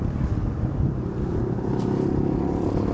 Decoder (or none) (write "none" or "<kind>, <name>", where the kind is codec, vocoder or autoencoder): none